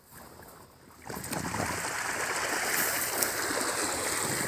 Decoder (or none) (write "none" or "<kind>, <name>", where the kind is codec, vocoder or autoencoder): none